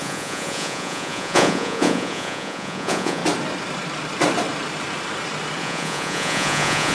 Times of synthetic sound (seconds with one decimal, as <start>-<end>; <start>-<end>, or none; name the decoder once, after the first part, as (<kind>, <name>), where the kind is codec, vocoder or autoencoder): 0.0-3.2 (vocoder, Vocos); 5.6-6.9